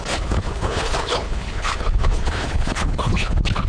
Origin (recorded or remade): remade